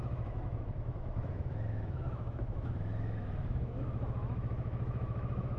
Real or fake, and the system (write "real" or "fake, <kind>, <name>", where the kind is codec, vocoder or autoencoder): fake, autoencoder, DAC-VAE